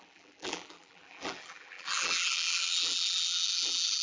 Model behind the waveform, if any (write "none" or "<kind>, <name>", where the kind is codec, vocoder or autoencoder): vocoder, BigVGAN v2